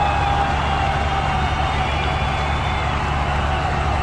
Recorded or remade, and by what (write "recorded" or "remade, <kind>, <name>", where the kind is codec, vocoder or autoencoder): recorded